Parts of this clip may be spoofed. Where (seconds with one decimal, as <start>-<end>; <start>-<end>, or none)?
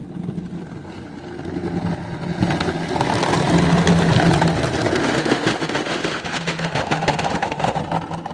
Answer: 5.0-7.8